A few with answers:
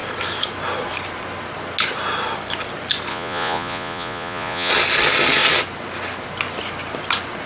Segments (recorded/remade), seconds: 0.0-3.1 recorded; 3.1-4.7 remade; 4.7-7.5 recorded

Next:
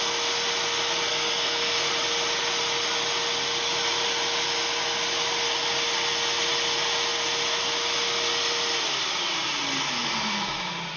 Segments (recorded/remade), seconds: 0.0-1.1 recorded; 1.1-1.9 remade; 1.9-11.0 recorded

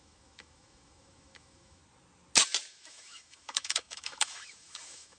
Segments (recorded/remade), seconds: 0.0-1.8 remade; 1.8-2.7 recorded; 2.7-5.2 remade

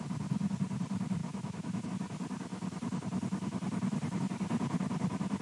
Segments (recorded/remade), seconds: 0.0-1.2 recorded; 1.2-1.9 remade; 1.9-5.4 recorded